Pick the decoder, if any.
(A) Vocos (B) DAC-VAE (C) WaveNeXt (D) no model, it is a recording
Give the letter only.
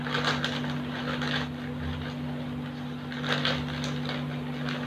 D